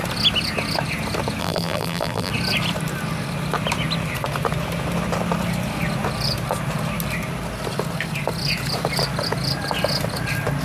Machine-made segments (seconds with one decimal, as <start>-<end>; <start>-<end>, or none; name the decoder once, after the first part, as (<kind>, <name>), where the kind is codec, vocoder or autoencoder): 1.4-2.3 (vocoder, BigVGAN v2)